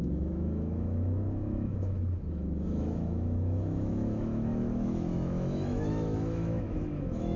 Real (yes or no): no